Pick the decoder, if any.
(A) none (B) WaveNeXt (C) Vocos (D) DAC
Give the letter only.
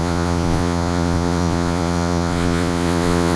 C